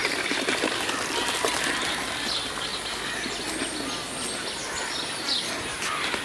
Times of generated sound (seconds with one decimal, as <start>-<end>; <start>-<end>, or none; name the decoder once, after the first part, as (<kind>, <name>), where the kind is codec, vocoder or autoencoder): none